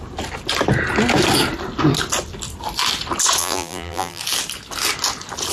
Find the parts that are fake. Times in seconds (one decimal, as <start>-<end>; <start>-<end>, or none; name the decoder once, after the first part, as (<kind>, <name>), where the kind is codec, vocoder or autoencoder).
3.4-4.2 (vocoder, BigVGAN v2)